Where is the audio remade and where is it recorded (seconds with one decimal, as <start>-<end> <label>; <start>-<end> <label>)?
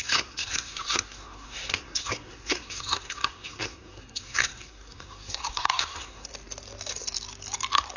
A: 0.0-6.3 remade; 6.3-8.0 recorded